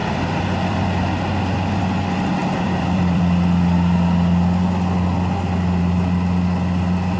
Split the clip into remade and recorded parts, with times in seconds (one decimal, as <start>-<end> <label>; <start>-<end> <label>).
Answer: 0.0-1.8 remade; 1.8-2.4 recorded; 2.4-3.2 remade; 3.2-7.2 recorded